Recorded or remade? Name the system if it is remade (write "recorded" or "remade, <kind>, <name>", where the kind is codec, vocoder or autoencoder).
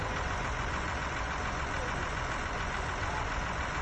remade, vocoder, Vocos